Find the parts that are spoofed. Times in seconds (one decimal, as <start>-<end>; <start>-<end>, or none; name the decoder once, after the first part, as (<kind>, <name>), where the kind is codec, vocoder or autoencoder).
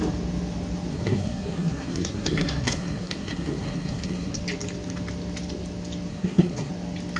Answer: 0.9-4.4 (codec, SNAC); 6.1-6.7